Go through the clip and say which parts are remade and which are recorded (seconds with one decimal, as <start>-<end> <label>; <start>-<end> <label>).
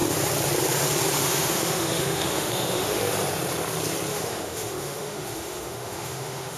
0.0-1.2 recorded; 1.2-3.0 remade; 3.0-4.1 recorded; 4.1-6.6 remade